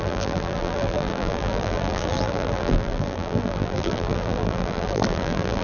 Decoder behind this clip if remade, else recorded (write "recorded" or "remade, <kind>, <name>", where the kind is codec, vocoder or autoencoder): remade, vocoder, BigVGAN v2